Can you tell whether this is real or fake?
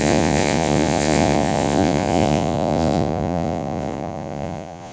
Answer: fake